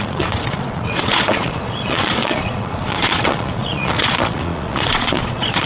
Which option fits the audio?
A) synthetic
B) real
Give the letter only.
A